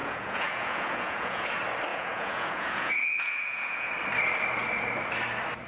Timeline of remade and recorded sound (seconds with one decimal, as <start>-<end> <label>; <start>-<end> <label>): 0.0-1.5 remade; 1.5-1.9 recorded; 1.9-3.9 remade; 3.9-5.7 recorded